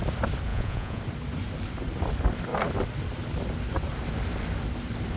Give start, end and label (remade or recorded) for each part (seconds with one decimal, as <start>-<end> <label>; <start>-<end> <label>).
0.0-0.5 recorded; 0.5-1.0 remade; 1.0-5.2 recorded